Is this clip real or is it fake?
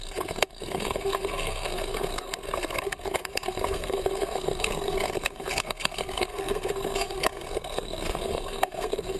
fake